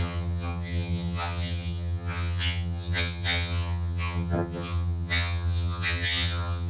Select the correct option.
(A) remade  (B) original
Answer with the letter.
A